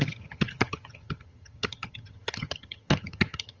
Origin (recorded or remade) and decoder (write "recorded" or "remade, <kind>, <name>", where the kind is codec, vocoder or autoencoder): remade, vocoder, HiFi-GAN